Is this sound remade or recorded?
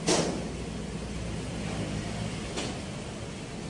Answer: recorded